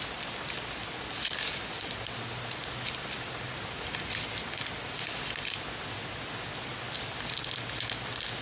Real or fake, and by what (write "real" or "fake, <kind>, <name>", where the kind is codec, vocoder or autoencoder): real